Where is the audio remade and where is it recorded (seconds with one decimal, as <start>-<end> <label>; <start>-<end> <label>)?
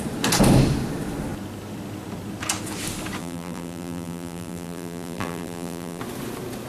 0.0-3.2 recorded; 3.2-6.0 remade; 6.0-6.7 recorded